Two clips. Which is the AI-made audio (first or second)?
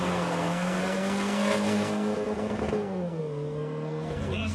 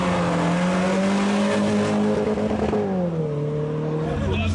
first